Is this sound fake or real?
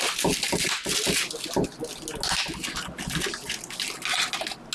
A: real